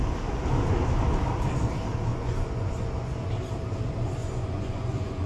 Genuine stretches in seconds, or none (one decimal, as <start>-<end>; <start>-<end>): 0.0-2.1; 3.3-4.2